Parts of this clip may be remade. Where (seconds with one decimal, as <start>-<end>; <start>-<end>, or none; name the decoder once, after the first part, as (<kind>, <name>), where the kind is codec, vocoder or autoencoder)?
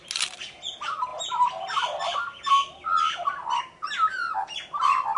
none